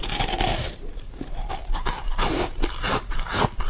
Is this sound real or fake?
real